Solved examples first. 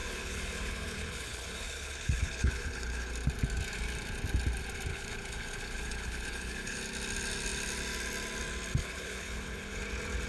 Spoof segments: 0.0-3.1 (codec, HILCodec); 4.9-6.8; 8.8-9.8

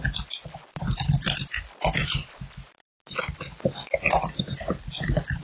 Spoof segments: none

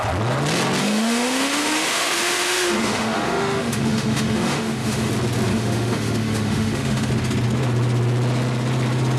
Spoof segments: 0.8-5.1 (autoencoder, DAC-VAE); 5.5-7.1

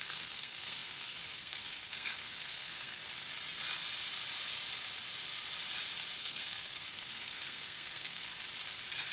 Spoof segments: 0.0-3.0 (codec, SNAC); 6.2-8.3

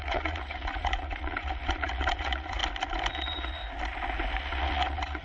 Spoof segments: 0.0-2.6 (vocoder, Vocos); 3.1-3.6; 4.4-5.2

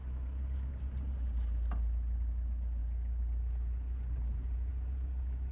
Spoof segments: none

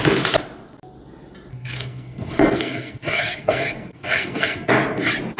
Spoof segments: 1.5-4.7 (codec, SNAC)

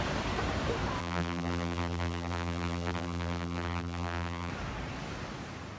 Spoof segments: 1.0-4.5 (vocoder, BigVGAN v2)